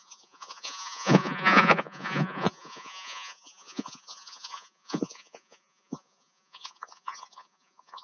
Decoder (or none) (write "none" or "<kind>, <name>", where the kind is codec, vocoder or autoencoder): vocoder, Vocos